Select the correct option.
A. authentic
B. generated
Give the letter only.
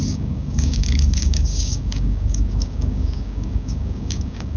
B